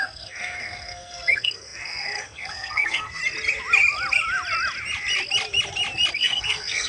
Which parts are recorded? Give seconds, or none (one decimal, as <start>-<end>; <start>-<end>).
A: 3.2-6.1